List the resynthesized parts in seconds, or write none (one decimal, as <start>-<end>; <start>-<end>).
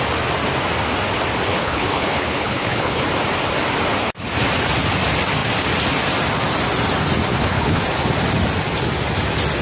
1.5-3.0; 7.3-7.8